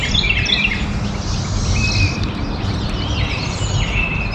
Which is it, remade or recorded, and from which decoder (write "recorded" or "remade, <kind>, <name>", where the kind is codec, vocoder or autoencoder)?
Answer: recorded